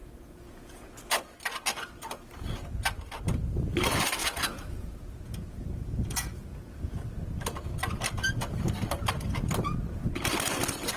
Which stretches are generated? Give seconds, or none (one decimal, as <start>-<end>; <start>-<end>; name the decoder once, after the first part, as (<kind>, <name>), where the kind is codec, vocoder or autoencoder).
0.0-1.0 (vocoder, Vocos); 4.2-6.8